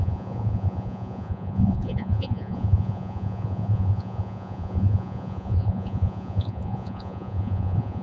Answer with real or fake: fake